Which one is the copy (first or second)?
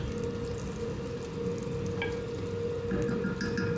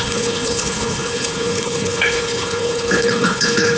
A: second